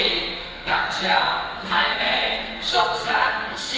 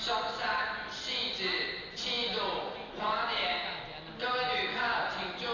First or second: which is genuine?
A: second